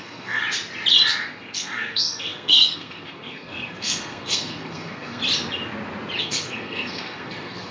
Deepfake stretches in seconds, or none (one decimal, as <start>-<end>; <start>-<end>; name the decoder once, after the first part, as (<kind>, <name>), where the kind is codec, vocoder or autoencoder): 0.0-0.4 (codec, SNAC); 1.2-5.2; 6.2-7.7